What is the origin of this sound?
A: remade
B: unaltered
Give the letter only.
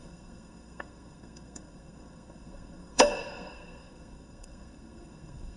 A